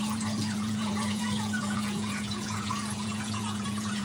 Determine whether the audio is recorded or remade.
remade